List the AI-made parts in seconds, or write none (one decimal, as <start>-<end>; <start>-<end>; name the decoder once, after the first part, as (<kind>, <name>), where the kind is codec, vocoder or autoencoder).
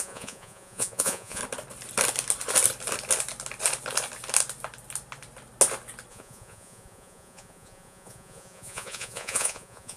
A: 0.0-1.4 (vocoder, Vocos); 6.1-10.0